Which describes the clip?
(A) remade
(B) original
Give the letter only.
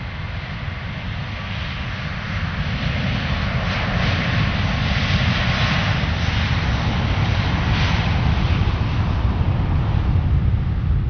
B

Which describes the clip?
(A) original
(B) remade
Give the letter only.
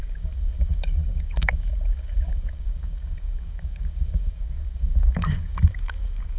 B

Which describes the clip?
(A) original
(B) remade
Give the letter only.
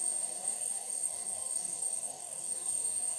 B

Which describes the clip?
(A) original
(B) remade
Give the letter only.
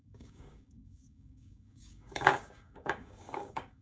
B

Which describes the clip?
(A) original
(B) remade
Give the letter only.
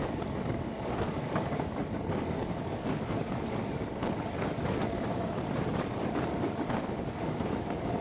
B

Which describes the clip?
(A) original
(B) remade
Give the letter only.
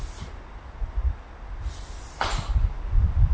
A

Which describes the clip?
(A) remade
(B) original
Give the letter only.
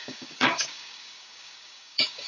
A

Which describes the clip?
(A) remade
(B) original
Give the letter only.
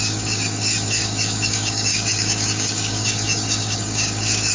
A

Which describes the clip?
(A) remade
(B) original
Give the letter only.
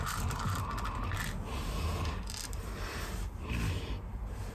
B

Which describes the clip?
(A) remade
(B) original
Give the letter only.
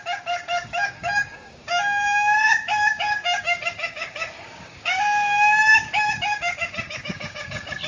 A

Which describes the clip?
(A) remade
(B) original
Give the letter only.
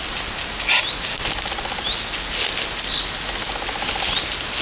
B